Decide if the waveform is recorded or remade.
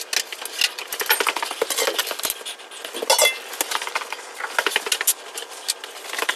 recorded